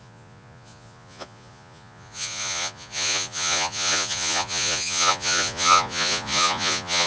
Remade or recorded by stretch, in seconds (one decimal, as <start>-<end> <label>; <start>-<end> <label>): 0.0-7.1 remade